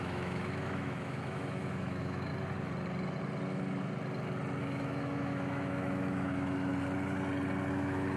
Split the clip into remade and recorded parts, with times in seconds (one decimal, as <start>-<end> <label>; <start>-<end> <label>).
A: 0.0-2.3 remade; 2.3-4.6 recorded; 4.6-6.7 remade; 6.7-7.7 recorded; 7.7-8.2 remade